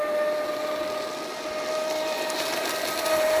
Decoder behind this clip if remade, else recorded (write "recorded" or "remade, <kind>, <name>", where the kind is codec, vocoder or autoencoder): recorded